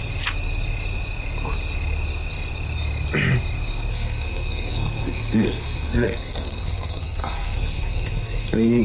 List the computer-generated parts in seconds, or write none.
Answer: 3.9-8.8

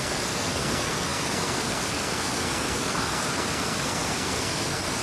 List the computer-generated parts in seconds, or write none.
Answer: 0.0-5.0

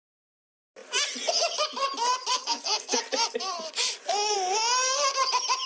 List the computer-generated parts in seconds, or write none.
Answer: 2.3-3.0

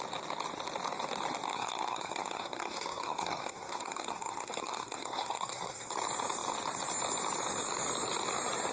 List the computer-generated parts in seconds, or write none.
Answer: 1.5-5.9